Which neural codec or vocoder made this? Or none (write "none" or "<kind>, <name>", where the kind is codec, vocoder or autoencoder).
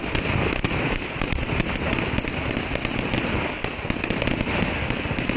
none